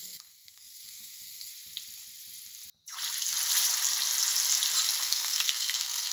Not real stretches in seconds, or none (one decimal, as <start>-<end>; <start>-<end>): 0.0-1.5; 5.0-6.1